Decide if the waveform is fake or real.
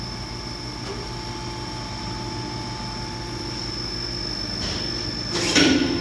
fake